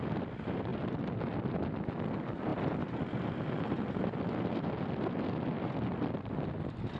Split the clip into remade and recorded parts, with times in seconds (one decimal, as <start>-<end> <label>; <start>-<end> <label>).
0.0-7.0 recorded